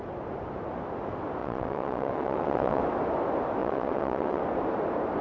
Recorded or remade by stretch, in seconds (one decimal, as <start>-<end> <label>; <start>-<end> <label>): 0.0-1.4 recorded; 1.4-2.8 remade; 2.8-3.6 recorded; 3.6-4.4 remade; 4.4-5.2 recorded